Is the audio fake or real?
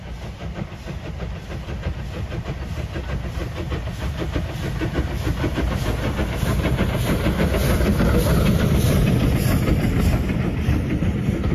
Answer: real